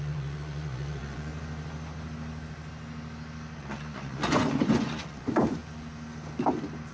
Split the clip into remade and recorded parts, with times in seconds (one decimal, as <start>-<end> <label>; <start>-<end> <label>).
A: 0.0-1.3 remade; 1.3-3.6 recorded; 3.6-5.6 remade; 5.6-6.9 recorded